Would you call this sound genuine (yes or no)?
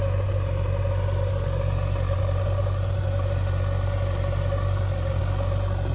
yes